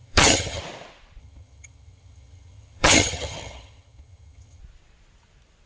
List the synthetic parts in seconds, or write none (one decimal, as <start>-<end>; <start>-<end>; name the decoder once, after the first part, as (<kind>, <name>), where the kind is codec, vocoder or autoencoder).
0.0-0.6 (vocoder, HiFi-GAN); 1.2-4.6